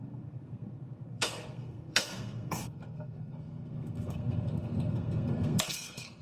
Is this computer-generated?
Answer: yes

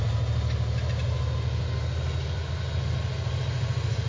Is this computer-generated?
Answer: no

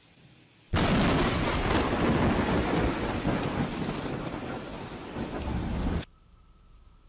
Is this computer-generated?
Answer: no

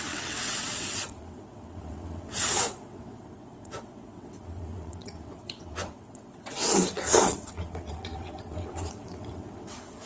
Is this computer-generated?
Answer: yes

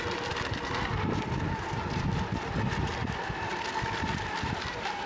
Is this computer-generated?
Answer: no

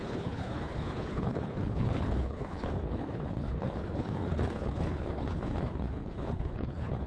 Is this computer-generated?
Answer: yes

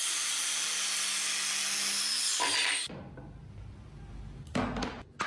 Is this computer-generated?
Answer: no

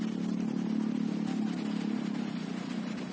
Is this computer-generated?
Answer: no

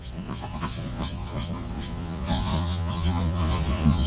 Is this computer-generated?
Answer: yes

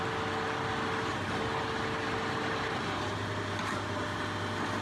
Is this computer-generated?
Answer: no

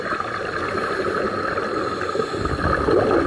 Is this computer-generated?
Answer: no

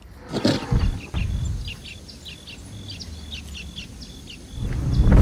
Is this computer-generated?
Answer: no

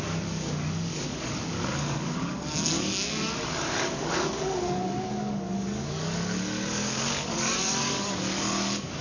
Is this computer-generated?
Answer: yes